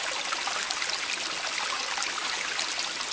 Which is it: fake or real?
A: real